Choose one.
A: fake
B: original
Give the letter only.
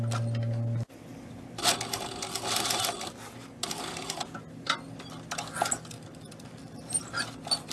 B